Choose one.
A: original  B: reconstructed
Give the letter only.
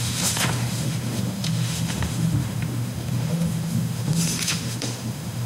B